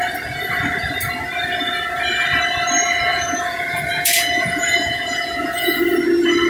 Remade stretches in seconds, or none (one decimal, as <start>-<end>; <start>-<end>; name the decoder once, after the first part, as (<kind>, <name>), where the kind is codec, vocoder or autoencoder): 3.1-5.8 (vocoder, Vocos)